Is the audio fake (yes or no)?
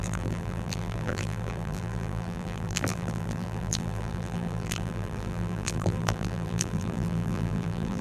yes